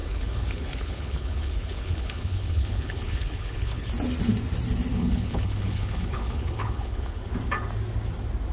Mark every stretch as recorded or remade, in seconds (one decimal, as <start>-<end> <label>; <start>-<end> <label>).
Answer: 0.0-3.9 remade; 3.9-4.9 recorded; 4.9-7.3 remade; 7.3-8.5 recorded